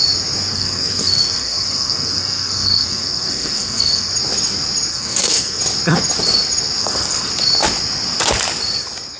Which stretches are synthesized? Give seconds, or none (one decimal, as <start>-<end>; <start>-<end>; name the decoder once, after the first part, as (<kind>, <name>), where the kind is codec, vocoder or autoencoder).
0.5-4.1 (codec, SNAC); 4.9-5.6; 6.8-7.3